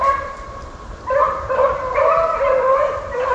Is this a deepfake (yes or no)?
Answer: yes